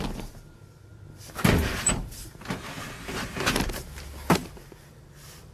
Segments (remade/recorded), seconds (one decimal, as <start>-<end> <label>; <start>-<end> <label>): 0.0-0.9 recorded; 0.9-2.5 remade; 2.5-4.4 recorded; 4.4-5.5 remade